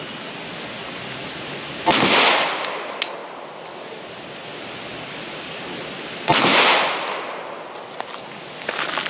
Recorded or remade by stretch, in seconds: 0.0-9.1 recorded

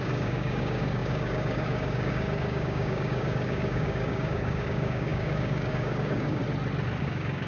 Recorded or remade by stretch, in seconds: 0.0-6.4 remade; 6.4-7.0 recorded; 7.0-7.5 remade

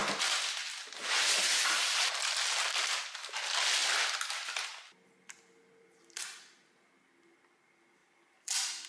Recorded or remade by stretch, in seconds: 0.0-8.0 recorded; 8.0-8.9 remade

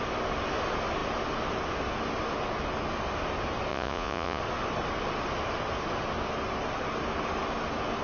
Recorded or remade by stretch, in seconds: 0.0-3.7 recorded; 3.7-4.4 remade; 4.4-8.0 recorded

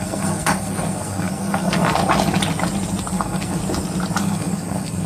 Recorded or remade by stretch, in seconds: 0.0-2.0 remade; 2.0-3.1 recorded; 3.1-3.6 remade; 3.6-4.2 recorded; 4.2-5.1 remade

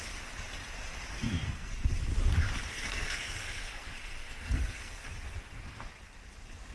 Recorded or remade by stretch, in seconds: 0.0-1.1 recorded; 1.1-1.7 remade; 1.7-2.7 recorded; 2.7-5.9 remade; 5.9-6.7 recorded